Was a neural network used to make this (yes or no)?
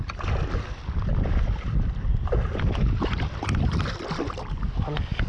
no